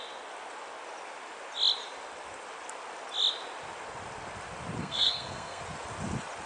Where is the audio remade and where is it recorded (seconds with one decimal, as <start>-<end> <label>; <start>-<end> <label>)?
0.0-4.8 recorded; 4.8-5.6 remade; 5.6-6.5 recorded